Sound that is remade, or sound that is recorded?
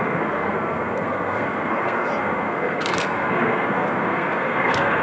remade